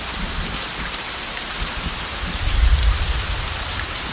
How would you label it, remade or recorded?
remade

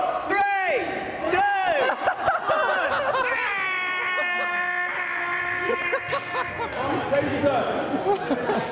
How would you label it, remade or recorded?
recorded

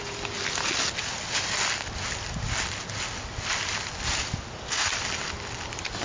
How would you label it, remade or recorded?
recorded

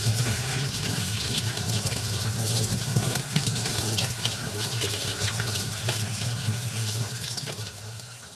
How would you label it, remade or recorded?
remade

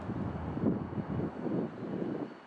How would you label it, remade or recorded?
recorded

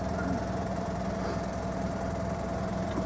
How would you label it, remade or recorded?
recorded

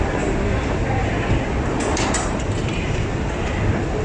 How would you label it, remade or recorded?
recorded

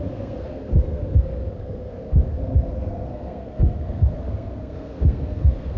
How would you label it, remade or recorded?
remade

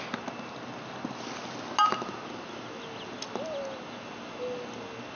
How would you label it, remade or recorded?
recorded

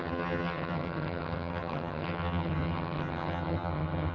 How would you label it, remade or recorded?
remade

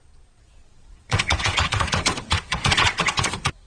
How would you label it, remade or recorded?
remade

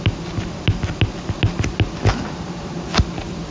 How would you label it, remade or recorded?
recorded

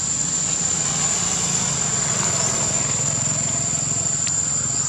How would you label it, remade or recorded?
recorded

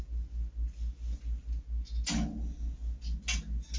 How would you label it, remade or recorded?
recorded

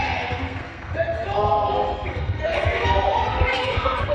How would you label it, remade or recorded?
remade